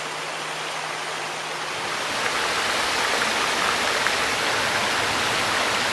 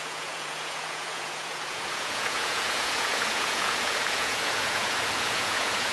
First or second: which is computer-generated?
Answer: second